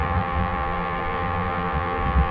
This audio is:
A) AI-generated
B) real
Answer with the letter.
A